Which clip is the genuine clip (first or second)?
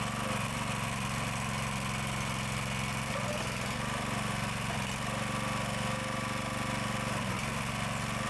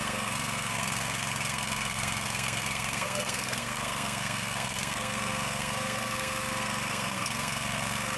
first